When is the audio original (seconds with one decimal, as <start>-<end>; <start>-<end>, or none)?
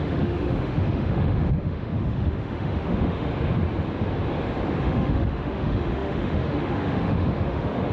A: 3.3-4.8